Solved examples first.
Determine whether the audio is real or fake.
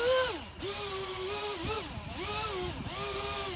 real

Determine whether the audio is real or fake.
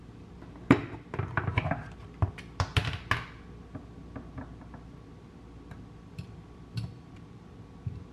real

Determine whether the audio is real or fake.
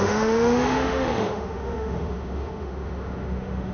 fake